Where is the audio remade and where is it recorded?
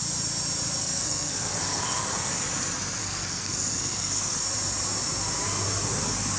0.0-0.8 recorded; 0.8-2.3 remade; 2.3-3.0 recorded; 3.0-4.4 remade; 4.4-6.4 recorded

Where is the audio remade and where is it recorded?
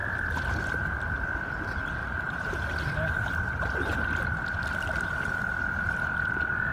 0.0-6.7 recorded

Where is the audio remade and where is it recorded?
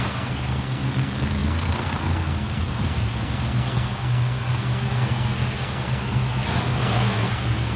0.0-7.8 remade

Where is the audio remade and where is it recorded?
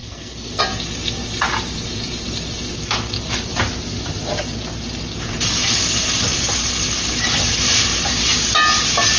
0.0-0.6 remade; 0.6-9.2 recorded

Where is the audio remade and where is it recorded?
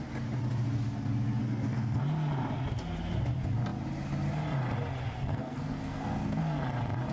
0.0-1.4 recorded; 1.4-2.0 remade; 2.0-5.3 recorded; 5.3-6.4 remade; 6.4-7.1 recorded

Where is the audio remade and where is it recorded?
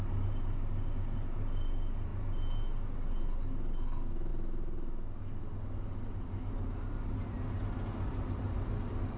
0.0-9.2 recorded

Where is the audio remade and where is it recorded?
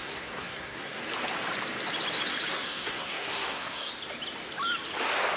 0.0-1.0 remade; 1.0-2.5 recorded; 2.5-3.9 remade; 3.9-5.4 recorded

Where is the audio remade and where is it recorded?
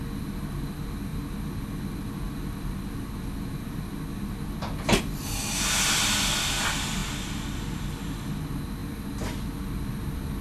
0.0-10.4 recorded